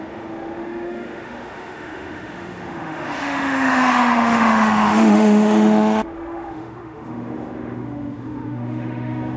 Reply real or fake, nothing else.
fake